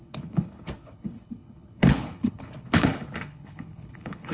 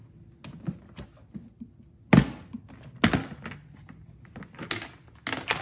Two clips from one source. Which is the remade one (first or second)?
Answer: first